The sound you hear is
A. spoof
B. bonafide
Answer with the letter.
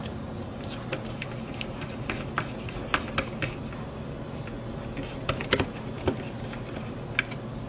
B